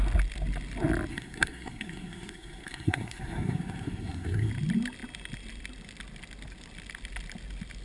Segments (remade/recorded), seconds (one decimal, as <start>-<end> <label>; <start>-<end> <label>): 0.0-1.1 recorded; 1.1-4.5 remade; 4.5-7.8 recorded